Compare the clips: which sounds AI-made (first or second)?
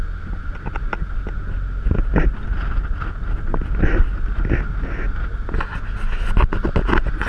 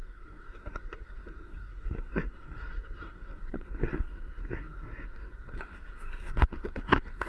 second